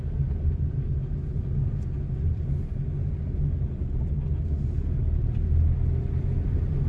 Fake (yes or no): no